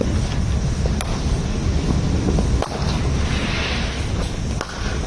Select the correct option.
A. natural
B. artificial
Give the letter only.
A